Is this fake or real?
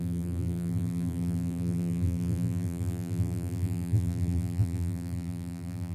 fake